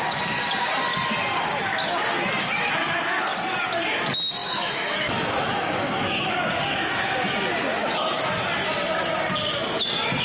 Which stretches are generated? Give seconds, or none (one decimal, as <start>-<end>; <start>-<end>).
4.4-6.3; 7.8-8.3